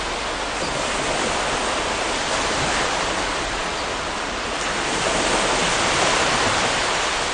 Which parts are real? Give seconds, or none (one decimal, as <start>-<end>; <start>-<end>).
0.0-3.6; 4.9-5.6; 6.4-7.3